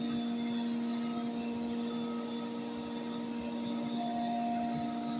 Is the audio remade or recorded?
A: recorded